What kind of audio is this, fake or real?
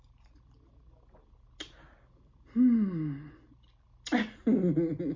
real